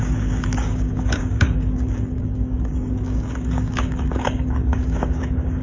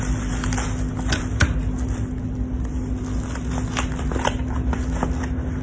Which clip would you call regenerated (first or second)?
first